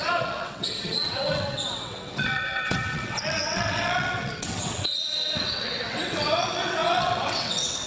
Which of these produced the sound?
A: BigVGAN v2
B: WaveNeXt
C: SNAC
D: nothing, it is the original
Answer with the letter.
B